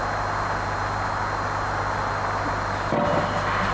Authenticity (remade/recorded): recorded